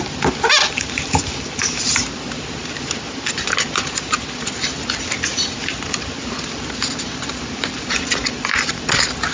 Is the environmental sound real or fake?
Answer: real